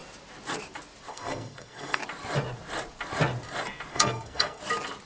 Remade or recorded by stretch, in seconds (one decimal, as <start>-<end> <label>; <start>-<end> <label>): 0.0-1.1 recorded; 1.1-2.0 remade; 2.0-3.9 recorded; 3.9-4.6 remade; 4.6-5.1 recorded